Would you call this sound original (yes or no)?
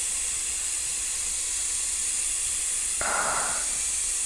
no